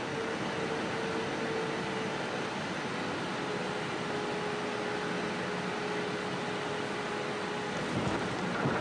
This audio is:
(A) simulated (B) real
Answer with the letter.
B